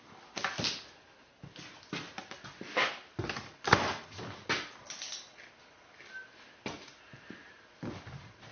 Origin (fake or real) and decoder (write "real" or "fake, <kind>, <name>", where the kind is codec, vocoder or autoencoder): real